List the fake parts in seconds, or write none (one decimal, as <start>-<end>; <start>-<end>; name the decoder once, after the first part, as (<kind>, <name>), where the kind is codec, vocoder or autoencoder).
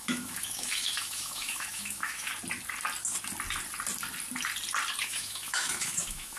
0.0-2.3 (autoencoder, DAC-VAE); 5.0-6.4